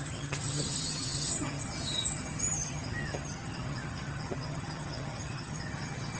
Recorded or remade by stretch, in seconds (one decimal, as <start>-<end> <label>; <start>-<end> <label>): 0.0-6.2 remade